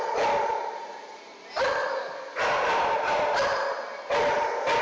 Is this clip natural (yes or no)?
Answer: yes